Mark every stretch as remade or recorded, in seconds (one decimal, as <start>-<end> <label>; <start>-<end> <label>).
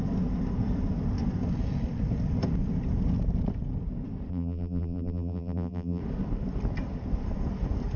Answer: 0.0-4.3 recorded; 4.3-6.0 remade; 6.0-8.0 recorded